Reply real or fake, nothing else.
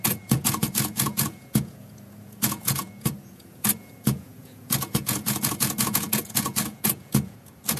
fake